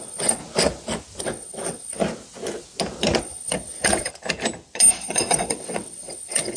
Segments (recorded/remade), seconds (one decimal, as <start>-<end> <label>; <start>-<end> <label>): 0.0-0.4 remade; 0.4-1.2 recorded; 1.2-2.0 remade; 2.0-3.2 recorded; 3.2-4.1 remade; 4.1-4.9 recorded; 4.9-6.6 remade